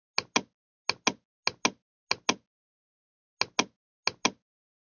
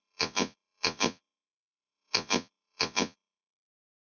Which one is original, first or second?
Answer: first